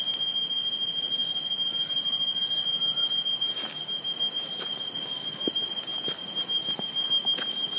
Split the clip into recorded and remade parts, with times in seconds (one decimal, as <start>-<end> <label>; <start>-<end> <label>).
0.0-7.8 recorded